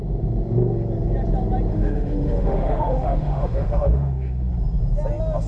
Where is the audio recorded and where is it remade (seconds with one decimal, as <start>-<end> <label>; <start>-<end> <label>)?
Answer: 0.0-1.7 recorded; 1.7-4.5 remade; 4.5-5.5 recorded